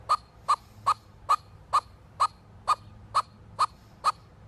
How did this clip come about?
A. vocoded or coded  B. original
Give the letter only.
B